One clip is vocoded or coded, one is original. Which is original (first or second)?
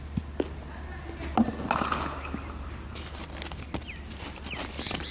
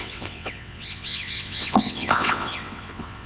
first